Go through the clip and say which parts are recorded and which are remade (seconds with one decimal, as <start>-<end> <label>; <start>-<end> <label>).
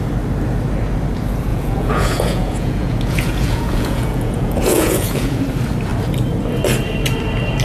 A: 0.0-1.5 recorded; 1.5-5.4 remade; 5.4-7.6 recorded